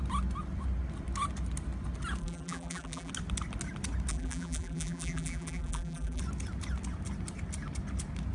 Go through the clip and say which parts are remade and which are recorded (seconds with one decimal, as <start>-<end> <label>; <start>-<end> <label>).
0.0-2.2 recorded; 2.2-3.1 remade; 3.1-4.1 recorded; 4.1-6.2 remade; 6.2-8.3 recorded